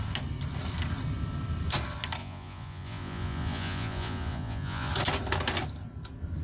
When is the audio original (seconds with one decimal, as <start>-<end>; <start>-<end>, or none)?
0.0-2.2; 4.9-6.4